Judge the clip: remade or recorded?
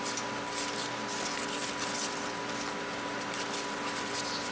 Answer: recorded